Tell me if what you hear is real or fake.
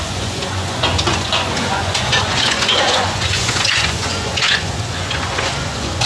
fake